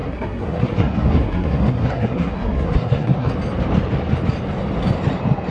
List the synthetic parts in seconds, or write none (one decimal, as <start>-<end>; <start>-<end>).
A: 0.0-3.3